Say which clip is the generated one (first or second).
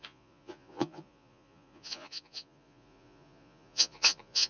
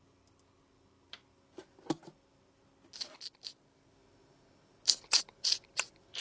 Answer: first